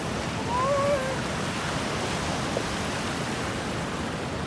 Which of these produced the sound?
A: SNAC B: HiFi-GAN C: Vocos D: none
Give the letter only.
D